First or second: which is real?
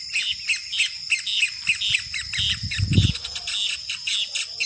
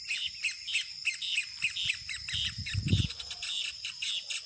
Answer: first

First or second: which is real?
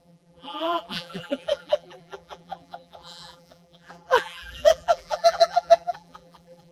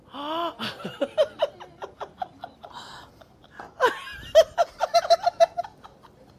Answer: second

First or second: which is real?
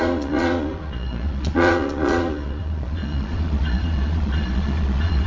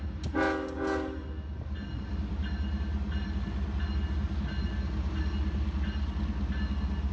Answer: second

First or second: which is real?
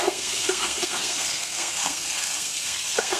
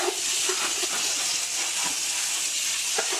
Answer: second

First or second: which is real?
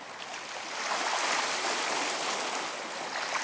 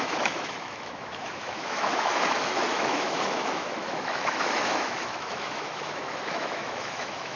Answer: first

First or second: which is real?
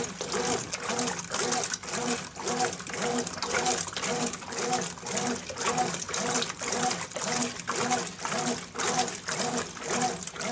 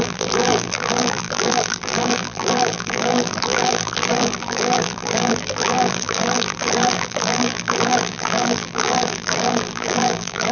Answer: first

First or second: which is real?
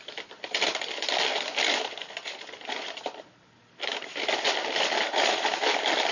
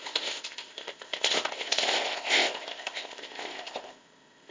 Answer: first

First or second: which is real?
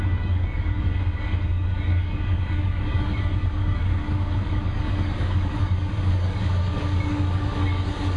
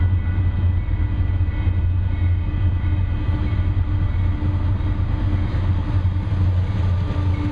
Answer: second